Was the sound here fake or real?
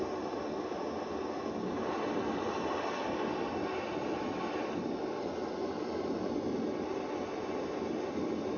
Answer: real